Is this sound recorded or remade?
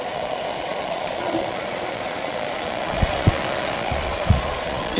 remade